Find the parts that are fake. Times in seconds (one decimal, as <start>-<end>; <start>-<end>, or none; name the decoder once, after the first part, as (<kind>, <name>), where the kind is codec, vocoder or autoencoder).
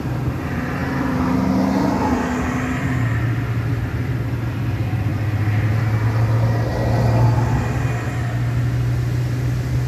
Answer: none